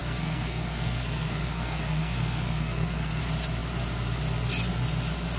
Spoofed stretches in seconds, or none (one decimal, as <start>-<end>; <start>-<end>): 0.0-3.2